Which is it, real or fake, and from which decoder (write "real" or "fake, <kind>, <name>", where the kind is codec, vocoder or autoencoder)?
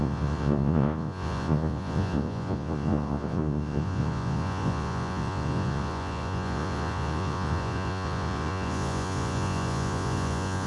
fake, vocoder, Vocos